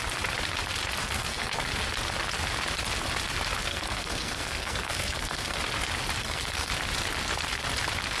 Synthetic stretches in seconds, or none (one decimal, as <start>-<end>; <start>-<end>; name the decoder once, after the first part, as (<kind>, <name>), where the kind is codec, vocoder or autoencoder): 1.0-1.7 (codec, SNAC); 3.7-5.6; 6.2-6.7